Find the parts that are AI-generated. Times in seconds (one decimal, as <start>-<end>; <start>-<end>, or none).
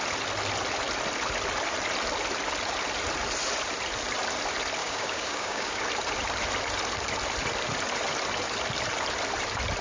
4.8-5.8